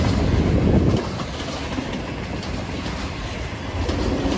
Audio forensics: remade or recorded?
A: recorded